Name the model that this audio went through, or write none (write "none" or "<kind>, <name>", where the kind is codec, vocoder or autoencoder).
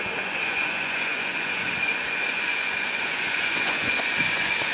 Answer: vocoder, Vocos